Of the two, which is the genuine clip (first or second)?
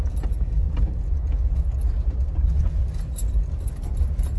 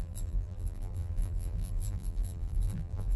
first